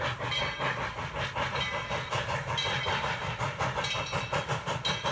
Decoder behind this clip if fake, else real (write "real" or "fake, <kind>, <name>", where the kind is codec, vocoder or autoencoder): real